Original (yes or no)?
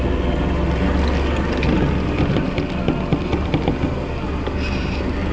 yes